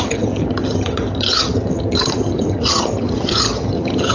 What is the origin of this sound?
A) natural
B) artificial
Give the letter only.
B